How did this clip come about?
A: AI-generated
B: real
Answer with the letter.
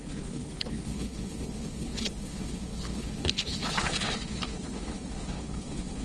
A